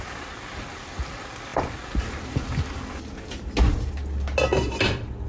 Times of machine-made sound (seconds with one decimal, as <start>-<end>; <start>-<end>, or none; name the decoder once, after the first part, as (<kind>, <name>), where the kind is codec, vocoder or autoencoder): none